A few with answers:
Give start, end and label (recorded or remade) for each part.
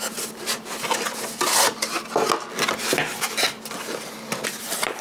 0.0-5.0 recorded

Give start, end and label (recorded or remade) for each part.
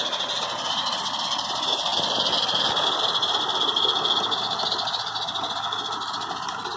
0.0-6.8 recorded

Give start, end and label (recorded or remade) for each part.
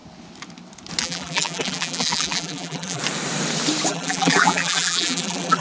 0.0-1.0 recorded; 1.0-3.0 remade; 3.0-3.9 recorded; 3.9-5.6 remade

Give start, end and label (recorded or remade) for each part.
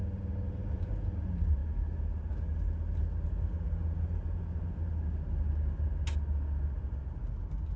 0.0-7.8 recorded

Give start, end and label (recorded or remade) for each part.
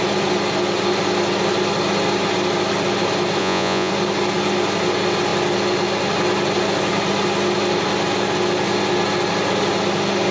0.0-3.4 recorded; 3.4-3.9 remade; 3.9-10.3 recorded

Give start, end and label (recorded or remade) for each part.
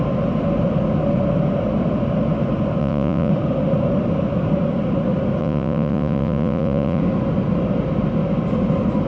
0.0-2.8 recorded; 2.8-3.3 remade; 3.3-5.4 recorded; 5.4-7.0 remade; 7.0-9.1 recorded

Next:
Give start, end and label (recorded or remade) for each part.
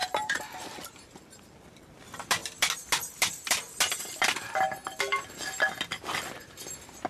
0.0-2.0 remade; 2.0-7.1 recorded